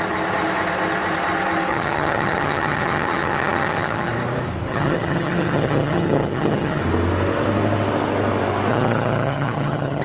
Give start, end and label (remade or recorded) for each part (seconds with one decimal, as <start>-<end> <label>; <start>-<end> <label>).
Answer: 0.0-1.7 recorded; 1.7-4.1 remade; 4.1-4.7 recorded; 4.7-6.8 remade; 6.8-8.7 recorded; 8.7-10.0 remade